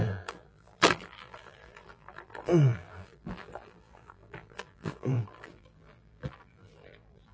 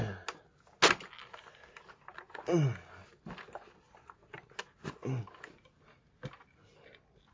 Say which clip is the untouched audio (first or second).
second